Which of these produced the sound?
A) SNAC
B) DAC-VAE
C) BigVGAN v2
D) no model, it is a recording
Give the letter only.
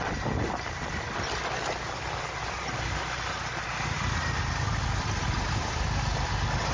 D